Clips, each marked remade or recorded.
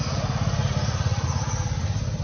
recorded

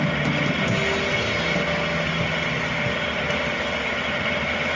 recorded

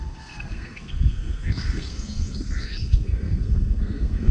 remade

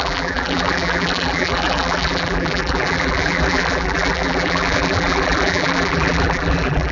remade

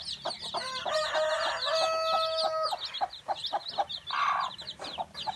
recorded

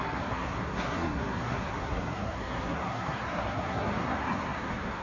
remade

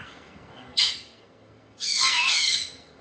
remade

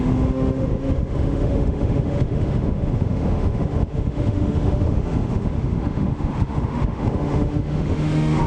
remade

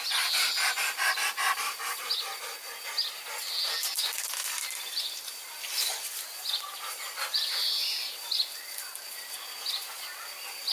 recorded